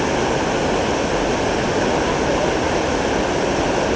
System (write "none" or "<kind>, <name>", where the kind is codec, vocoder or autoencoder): none